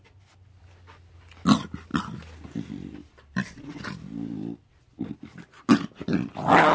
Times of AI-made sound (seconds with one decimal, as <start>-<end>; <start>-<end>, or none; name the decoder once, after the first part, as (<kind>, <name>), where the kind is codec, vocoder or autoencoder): none